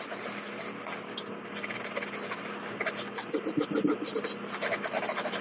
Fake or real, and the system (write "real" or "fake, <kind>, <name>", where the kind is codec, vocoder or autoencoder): real